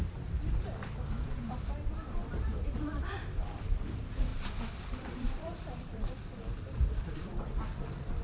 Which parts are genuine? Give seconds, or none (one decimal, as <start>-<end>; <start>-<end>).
4.3-5.0; 7.3-8.2